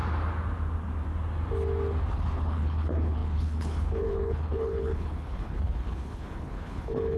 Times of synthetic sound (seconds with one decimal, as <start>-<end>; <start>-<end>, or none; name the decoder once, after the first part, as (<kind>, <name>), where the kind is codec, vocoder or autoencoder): 2.1-7.2 (codec, HILCodec)